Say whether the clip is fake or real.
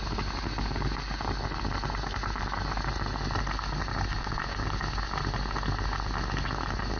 real